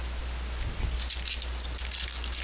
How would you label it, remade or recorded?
recorded